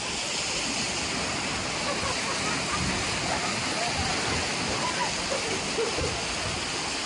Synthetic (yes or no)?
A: no